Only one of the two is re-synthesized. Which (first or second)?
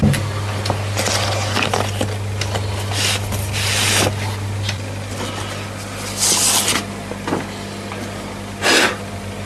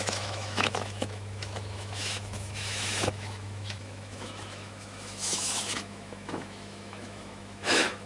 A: second